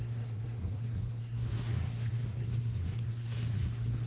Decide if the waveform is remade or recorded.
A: remade